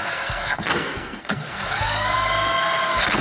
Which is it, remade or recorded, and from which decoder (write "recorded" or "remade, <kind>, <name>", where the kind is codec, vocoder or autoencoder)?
remade, codec, SNAC